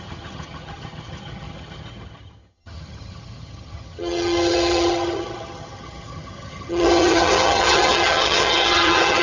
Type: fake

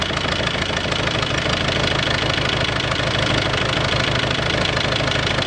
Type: real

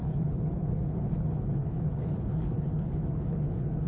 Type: fake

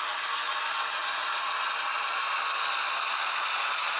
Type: real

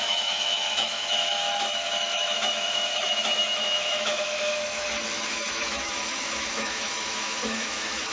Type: fake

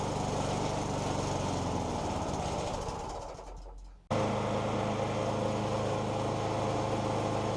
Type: real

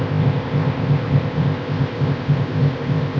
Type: fake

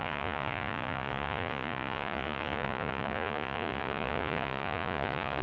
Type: fake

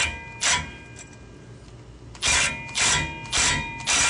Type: real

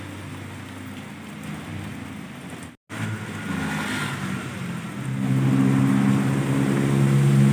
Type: real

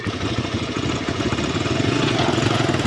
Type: fake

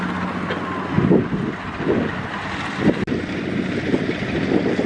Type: real